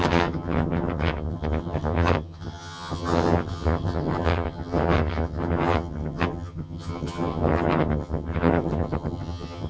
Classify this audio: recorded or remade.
remade